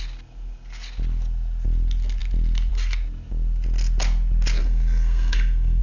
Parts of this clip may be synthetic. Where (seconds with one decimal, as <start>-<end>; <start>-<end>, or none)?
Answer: 4.6-5.8